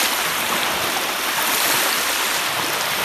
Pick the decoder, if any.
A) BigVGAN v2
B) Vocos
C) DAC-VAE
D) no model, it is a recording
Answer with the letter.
D